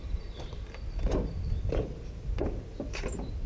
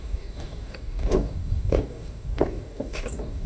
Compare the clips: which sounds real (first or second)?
first